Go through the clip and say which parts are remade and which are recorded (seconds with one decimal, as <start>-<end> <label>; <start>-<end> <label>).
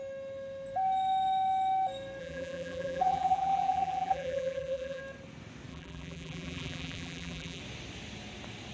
0.0-2.2 recorded; 2.2-5.0 remade; 5.0-5.7 recorded; 5.7-7.6 remade; 7.6-8.7 recorded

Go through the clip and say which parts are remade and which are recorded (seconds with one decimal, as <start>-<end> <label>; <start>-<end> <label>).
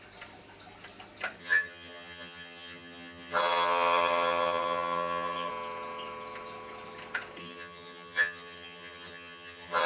0.0-1.4 recorded; 1.4-5.5 remade; 5.5-7.4 recorded; 7.4-9.9 remade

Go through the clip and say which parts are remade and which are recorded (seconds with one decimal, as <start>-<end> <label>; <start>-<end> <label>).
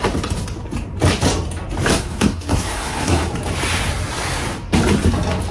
0.0-1.9 recorded; 1.9-3.3 remade; 3.3-5.5 recorded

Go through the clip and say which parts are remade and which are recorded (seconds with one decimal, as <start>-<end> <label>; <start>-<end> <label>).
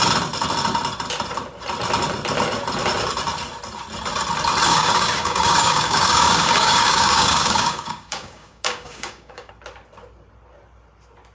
0.0-4.7 recorded; 4.7-9.5 remade; 9.5-11.3 recorded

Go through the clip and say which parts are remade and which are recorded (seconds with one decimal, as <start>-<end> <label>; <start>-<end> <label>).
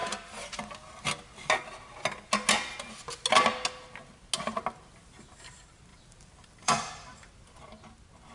0.0-0.6 remade; 0.6-5.9 recorded; 5.9-7.3 remade; 7.3-8.3 recorded